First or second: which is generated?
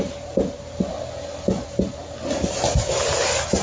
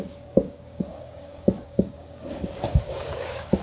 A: second